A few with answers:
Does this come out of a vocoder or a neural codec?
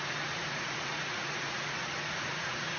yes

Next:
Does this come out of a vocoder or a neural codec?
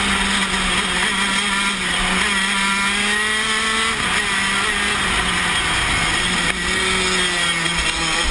no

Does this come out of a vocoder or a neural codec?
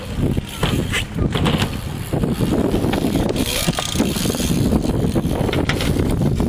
no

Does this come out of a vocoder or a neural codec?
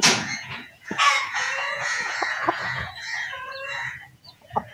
yes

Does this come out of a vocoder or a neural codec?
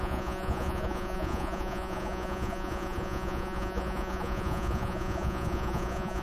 yes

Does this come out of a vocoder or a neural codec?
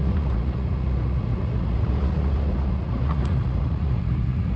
yes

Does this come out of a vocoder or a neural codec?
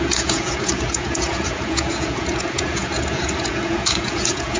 yes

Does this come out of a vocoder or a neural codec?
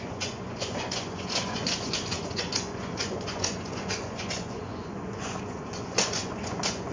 yes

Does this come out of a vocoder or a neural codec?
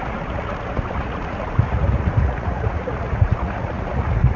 yes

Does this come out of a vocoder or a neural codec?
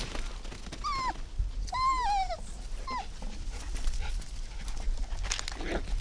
no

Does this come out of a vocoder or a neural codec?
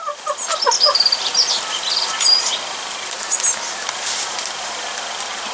no